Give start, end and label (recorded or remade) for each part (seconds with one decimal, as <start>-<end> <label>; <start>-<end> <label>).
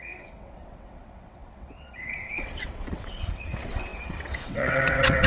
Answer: 0.0-5.3 remade